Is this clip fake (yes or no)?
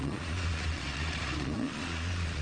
yes